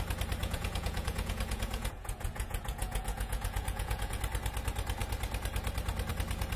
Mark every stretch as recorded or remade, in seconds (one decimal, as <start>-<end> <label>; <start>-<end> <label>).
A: 0.0-0.4 recorded; 0.4-4.2 remade; 4.2-6.6 recorded